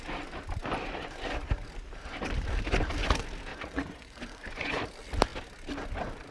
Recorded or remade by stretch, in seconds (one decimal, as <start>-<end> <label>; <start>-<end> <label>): 0.0-3.5 recorded; 3.5-4.8 remade; 4.8-6.3 recorded